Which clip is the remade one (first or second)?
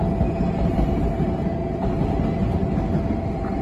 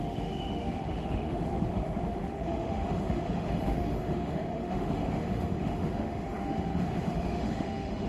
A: second